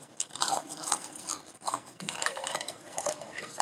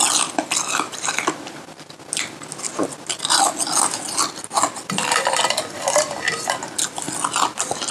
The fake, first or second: first